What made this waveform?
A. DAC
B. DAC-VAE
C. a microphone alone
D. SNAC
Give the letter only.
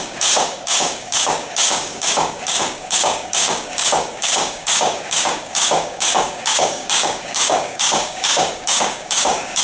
A